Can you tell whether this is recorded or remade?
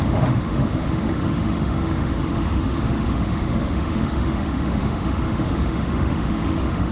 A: remade